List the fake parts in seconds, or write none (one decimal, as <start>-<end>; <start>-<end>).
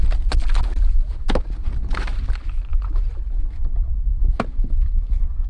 1.6-2.3; 3.7-4.3